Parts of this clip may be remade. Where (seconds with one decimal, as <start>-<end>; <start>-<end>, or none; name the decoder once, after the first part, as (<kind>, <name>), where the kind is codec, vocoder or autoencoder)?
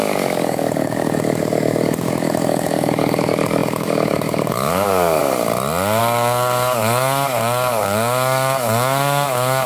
0.0-5.2 (codec, DAC); 6.0-9.7